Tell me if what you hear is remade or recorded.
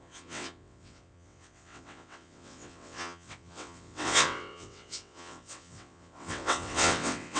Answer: remade